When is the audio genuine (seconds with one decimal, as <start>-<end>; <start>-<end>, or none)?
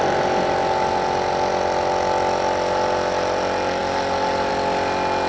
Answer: 0.0-5.3